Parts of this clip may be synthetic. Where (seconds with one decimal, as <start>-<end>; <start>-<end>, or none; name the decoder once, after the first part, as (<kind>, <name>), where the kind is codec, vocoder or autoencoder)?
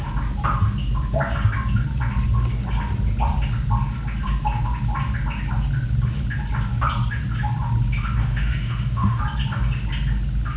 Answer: 8.2-9.2 (autoencoder, DAC-VAE)